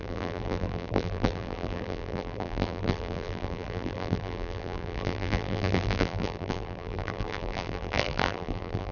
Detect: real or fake fake